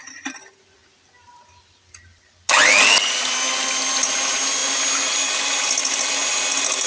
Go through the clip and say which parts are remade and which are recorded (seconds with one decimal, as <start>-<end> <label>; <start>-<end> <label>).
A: 0.0-6.9 recorded